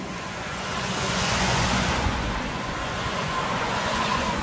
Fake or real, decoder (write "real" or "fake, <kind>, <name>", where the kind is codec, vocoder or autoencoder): fake, vocoder, Vocos